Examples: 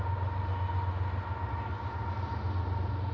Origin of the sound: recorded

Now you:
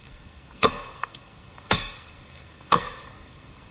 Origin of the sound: remade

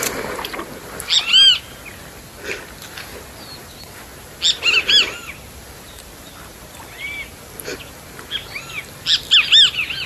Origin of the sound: recorded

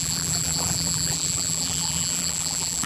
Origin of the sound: remade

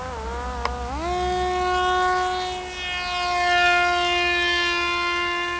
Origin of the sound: recorded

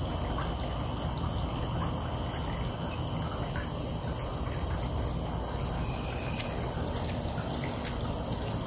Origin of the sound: recorded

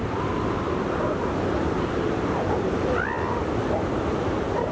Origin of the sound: recorded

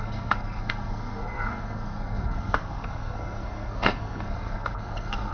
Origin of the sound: remade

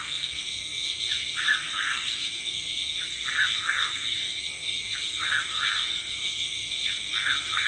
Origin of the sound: remade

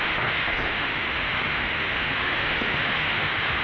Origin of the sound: remade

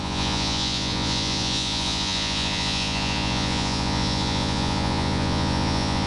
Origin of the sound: remade